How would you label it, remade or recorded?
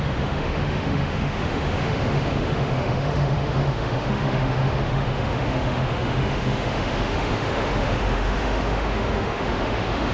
remade